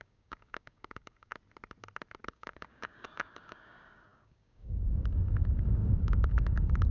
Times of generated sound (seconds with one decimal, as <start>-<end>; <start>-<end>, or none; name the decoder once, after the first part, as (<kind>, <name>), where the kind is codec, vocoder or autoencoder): 0.0-1.3 (codec, DAC); 2.3-6.9